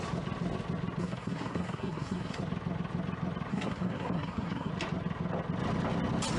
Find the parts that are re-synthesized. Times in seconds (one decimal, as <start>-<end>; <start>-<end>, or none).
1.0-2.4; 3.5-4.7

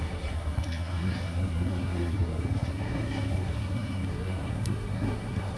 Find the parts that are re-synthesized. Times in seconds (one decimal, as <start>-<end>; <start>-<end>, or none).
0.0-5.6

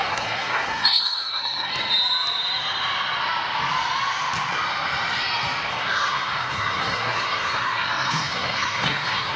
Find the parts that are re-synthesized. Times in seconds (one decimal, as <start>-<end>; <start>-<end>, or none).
0.0-1.7; 5.7-9.4

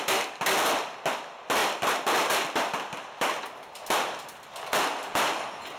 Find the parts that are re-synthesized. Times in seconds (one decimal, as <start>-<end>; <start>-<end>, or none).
none

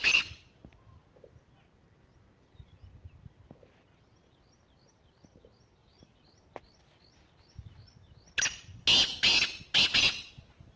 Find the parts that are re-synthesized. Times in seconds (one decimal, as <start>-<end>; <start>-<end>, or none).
none

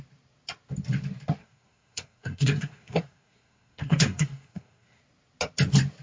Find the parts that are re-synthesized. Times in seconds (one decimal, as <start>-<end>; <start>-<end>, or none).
1.4-5.0

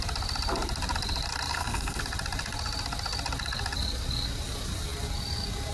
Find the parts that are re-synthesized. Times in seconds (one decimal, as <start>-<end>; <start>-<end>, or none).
1.5-2.0